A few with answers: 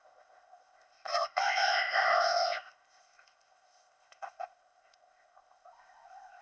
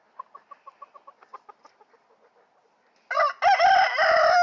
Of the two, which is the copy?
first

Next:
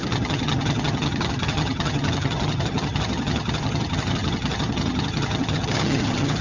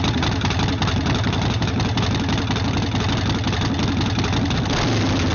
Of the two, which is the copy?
first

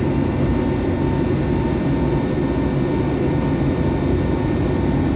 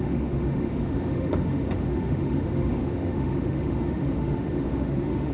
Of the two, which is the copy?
second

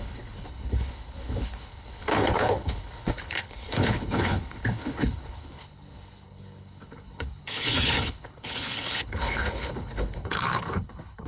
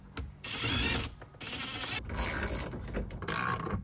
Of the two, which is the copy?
first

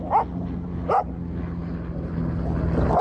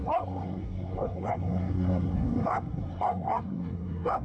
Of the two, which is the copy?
second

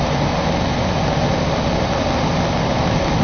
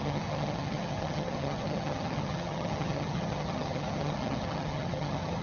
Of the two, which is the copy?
second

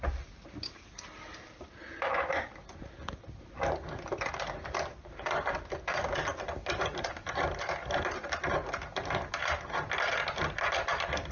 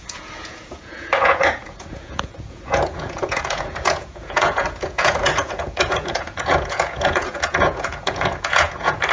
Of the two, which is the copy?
second